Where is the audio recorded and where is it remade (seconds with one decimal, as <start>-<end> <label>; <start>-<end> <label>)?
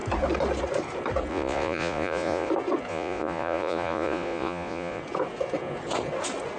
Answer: 0.0-1.3 recorded; 1.3-2.5 remade; 2.5-2.9 recorded; 2.9-5.0 remade; 5.0-6.6 recorded